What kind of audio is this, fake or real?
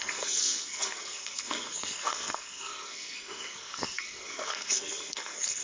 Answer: fake